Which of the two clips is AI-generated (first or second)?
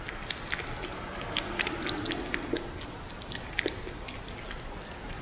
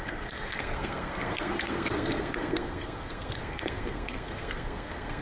second